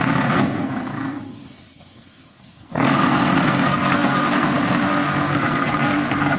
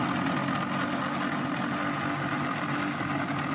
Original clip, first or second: second